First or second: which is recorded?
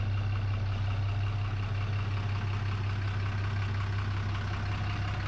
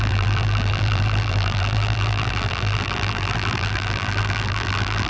first